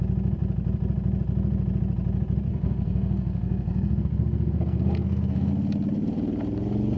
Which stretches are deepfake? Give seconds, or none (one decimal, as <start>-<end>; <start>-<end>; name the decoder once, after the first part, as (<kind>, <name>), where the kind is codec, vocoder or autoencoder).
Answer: 2.5-5.5 (codec, SNAC)